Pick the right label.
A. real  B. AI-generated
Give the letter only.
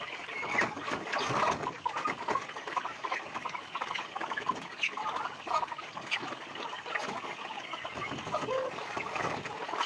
B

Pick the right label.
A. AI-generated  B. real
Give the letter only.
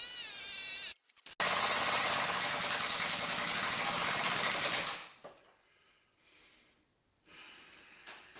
B